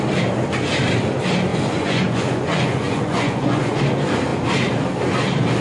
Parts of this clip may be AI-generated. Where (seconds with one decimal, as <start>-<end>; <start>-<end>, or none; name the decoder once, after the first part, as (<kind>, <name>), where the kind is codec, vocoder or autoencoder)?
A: 1.5-3.8 (vocoder, Vocos)